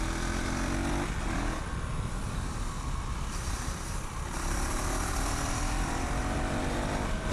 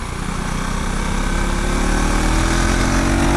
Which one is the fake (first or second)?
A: first